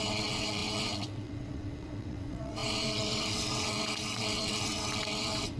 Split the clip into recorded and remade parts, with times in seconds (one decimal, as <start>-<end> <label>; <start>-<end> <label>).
0.0-5.6 remade